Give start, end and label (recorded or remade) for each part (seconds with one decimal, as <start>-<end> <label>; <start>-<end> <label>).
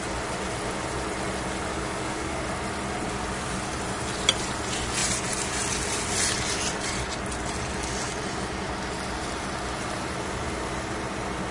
0.0-1.7 recorded; 1.7-2.4 remade; 2.4-11.5 recorded